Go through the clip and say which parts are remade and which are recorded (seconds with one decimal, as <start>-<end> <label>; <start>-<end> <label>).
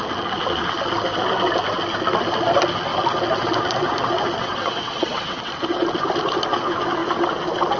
0.0-4.4 recorded; 4.4-5.5 remade; 5.5-7.8 recorded